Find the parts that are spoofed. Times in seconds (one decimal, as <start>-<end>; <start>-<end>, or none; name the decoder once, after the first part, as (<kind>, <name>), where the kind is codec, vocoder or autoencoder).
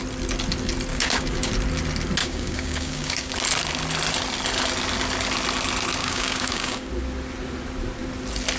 0.9-1.5 (codec, DAC); 2.2-3.3; 6.0-6.9